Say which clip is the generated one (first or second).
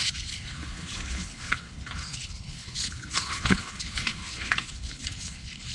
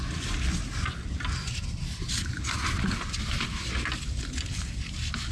first